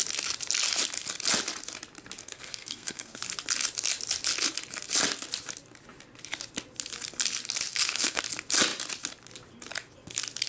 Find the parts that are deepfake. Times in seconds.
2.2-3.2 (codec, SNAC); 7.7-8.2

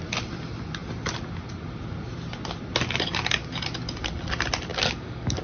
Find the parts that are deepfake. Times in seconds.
4.7-5.4 (codec, DAC)